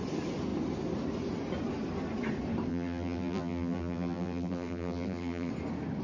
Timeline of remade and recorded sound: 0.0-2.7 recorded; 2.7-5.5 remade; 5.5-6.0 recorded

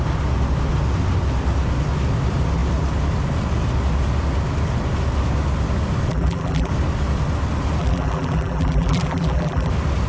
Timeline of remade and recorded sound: 0.0-6.1 recorded; 6.1-6.7 remade; 6.7-7.8 recorded; 7.8-9.7 remade; 9.7-10.1 recorded

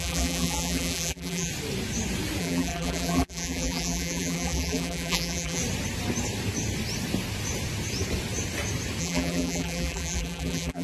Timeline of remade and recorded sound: 0.0-1.5 remade; 1.5-2.4 recorded; 2.4-5.6 remade; 5.6-9.0 recorded; 9.0-10.8 remade

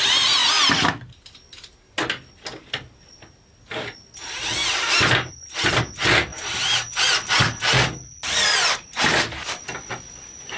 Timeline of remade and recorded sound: 0.0-0.4 remade; 0.4-5.3 recorded; 5.3-6.3 remade; 6.3-7.0 recorded; 7.0-10.6 remade

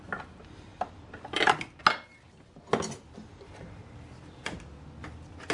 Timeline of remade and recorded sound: 0.0-0.7 recorded; 0.7-1.8 remade; 1.8-3.2 recorded; 3.2-3.8 remade; 3.8-5.5 recorded

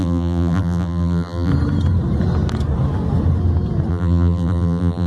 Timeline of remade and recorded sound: 0.0-1.5 remade; 1.5-3.9 recorded; 3.9-5.1 remade